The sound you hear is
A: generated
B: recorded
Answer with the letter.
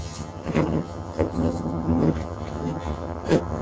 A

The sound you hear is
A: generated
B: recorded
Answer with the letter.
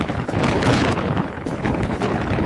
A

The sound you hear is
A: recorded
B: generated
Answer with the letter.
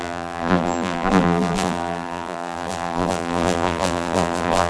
B